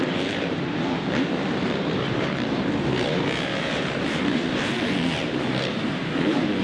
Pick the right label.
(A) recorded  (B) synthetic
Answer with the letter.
B